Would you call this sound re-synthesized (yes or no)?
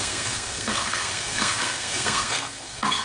yes